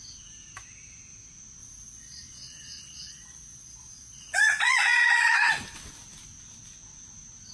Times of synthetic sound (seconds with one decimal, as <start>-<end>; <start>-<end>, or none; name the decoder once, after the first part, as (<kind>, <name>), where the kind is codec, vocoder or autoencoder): 1.6-5.5 (vocoder, Vocos)